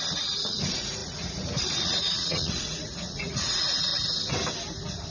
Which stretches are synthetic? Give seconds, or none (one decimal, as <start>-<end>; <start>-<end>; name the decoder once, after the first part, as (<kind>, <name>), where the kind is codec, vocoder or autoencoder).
0.0-3.9 (vocoder, Vocos)